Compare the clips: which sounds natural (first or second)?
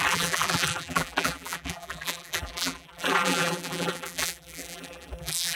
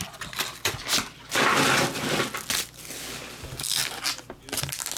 second